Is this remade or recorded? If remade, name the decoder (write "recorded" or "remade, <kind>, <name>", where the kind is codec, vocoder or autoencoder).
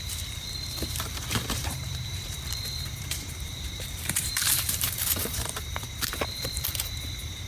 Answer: remade, vocoder, BigVGAN v2